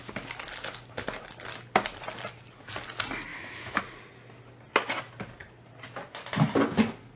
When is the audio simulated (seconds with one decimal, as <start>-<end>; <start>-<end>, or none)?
3.3-3.8